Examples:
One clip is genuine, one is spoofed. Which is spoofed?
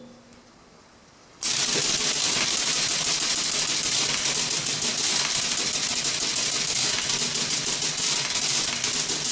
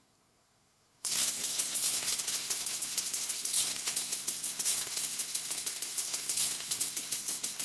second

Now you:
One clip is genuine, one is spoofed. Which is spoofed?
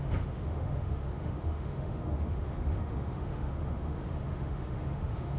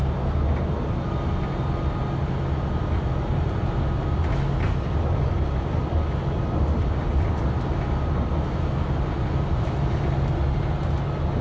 first